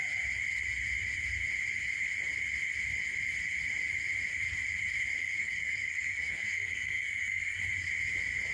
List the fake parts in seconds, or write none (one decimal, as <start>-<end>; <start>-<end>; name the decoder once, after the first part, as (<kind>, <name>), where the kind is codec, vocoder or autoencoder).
5.2-7.6 (codec, SNAC)